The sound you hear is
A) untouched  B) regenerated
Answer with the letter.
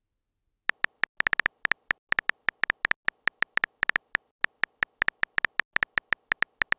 A